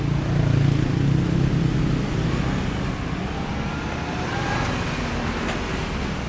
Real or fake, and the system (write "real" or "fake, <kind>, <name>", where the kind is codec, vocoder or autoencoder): real